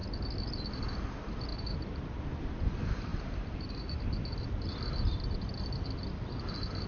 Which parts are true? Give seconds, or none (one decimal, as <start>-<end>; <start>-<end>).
0.0-1.5; 2.7-3.1; 4.0-6.9